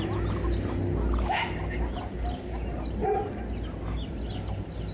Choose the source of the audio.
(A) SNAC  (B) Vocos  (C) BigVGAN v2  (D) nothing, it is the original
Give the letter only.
D